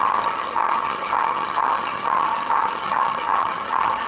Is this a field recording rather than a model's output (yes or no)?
no